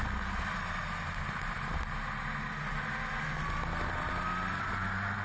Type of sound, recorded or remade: recorded